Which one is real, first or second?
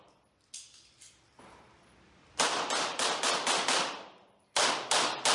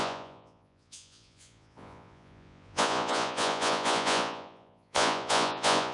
first